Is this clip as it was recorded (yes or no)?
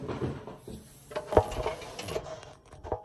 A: yes